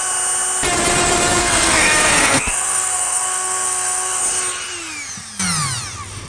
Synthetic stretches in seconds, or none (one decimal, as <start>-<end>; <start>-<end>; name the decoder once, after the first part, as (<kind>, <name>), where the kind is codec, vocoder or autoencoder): 1.4-4.2 (codec, SNAC)